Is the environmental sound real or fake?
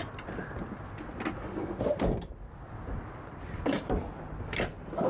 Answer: real